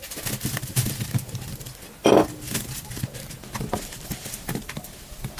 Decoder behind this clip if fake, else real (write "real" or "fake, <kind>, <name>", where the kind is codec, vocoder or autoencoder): real